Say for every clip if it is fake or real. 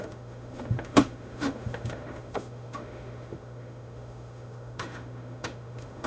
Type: fake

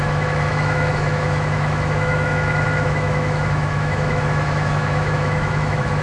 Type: fake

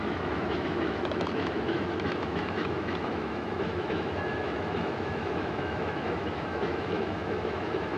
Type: fake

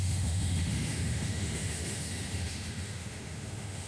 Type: fake